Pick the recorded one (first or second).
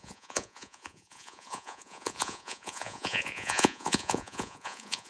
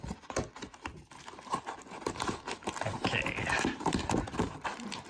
second